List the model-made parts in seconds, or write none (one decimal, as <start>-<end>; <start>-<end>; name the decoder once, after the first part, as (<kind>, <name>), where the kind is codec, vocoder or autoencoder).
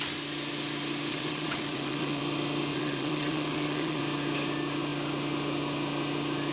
1.1-2.2 (vocoder, WaveNeXt); 2.7-4.0